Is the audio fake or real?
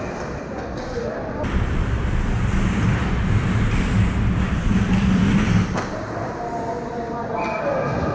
real